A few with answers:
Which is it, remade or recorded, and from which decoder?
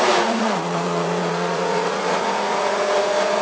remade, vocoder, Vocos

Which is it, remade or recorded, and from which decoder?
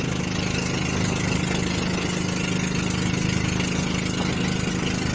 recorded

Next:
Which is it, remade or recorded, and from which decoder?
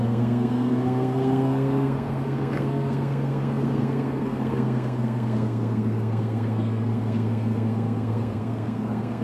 remade, codec, SNAC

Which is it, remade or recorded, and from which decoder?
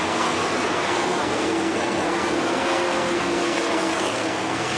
remade, codec, SNAC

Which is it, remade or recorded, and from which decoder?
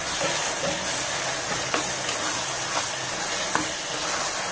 recorded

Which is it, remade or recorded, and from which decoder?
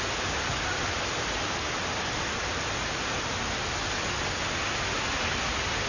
recorded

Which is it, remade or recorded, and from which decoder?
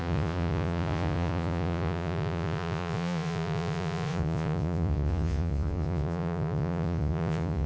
remade, vocoder, Vocos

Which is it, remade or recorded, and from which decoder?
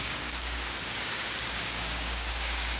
remade, codec, DAC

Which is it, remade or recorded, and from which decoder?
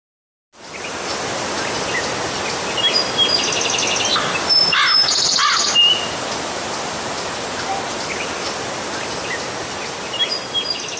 recorded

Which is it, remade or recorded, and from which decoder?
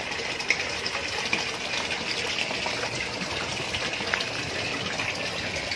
recorded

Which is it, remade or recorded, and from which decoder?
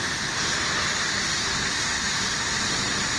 recorded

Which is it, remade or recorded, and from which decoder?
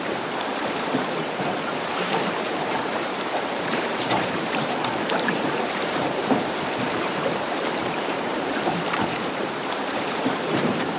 remade, vocoder, BigVGAN v2